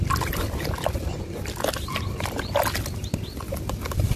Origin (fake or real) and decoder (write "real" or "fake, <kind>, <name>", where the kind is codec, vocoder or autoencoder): real